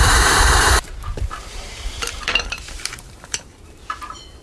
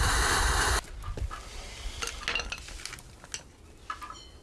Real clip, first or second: second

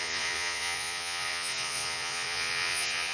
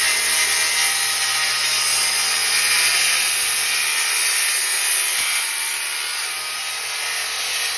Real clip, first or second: second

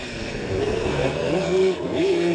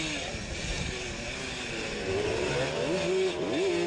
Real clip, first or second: second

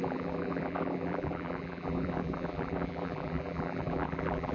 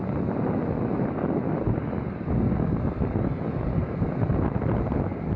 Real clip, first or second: second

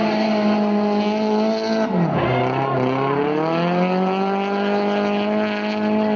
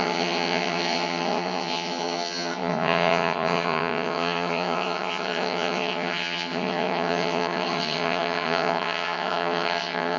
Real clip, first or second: first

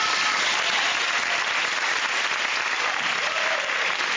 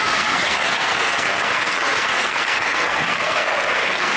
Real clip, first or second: first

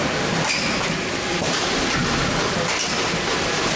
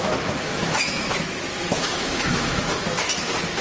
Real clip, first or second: first